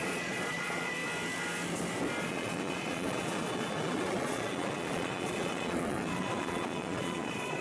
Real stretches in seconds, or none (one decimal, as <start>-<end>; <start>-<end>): 1.0-2.2